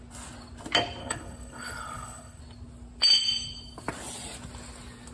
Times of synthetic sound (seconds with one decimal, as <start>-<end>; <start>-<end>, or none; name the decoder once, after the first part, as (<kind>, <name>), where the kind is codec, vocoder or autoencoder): 1.0-2.4 (codec, HILCodec)

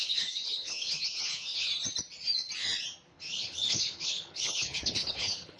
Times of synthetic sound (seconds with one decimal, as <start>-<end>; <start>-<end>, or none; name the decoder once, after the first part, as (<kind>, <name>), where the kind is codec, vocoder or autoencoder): 0.0-1.7 (codec, HILCodec); 3.1-5.6

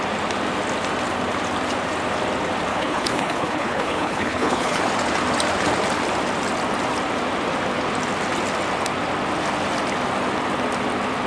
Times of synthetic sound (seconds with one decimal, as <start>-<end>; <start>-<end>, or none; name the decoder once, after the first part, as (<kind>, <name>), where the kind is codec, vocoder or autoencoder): 2.7-4.8 (codec, HILCodec)

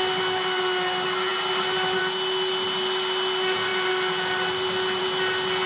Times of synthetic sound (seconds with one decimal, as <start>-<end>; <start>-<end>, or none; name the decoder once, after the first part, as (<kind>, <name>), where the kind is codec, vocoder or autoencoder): none

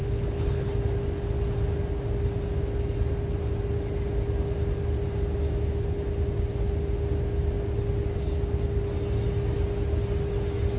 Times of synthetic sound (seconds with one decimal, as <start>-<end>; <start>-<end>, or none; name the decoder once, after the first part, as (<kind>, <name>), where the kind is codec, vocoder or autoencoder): 0.0-0.7 (codec, HILCodec)

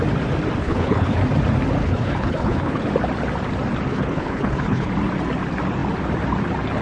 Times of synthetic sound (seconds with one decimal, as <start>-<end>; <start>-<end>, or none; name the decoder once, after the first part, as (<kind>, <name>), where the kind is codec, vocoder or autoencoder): 0.6-1.2 (codec, HILCodec); 1.8-2.9; 3.9-4.9

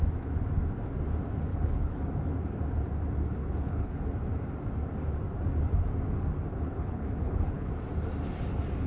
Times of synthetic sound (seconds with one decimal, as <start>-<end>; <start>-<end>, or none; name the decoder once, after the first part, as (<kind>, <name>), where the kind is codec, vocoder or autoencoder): 1.5-2.0 (codec, HILCodec); 3.4-4.0; 6.5-7.7